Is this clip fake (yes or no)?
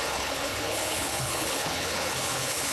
yes